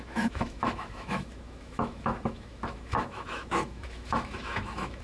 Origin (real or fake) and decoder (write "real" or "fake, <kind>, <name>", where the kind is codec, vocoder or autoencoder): fake, autoencoder, DAC-VAE